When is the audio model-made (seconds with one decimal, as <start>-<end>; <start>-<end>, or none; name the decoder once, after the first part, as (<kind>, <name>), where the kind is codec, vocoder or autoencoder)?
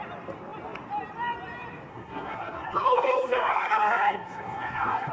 1.9-5.1 (codec, SNAC)